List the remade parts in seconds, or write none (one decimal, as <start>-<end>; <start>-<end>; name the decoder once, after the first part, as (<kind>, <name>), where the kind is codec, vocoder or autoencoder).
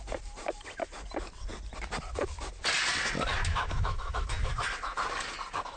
3.3-4.6 (autoencoder, DAC-VAE)